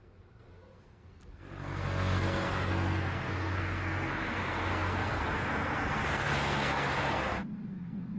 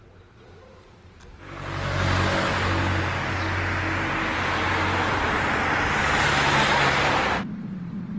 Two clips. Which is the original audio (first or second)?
second